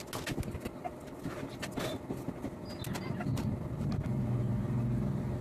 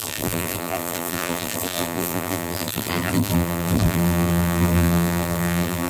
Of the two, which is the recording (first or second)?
first